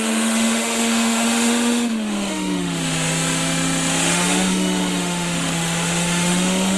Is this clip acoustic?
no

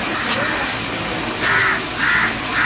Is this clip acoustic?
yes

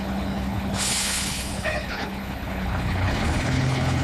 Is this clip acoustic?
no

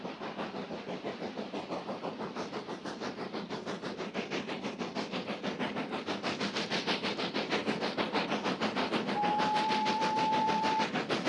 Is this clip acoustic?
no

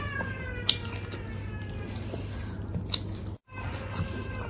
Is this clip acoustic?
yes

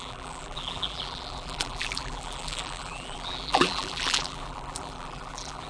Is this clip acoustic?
no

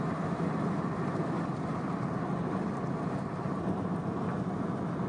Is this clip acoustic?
yes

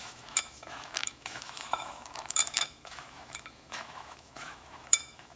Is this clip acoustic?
no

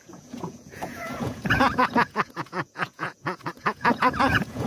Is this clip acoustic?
no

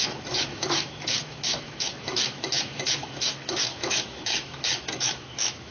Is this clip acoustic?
no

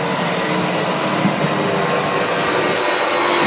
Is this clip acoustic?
yes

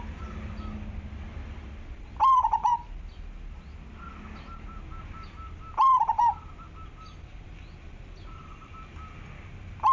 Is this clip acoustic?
yes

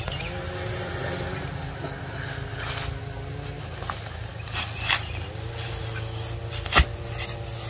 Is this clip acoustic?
yes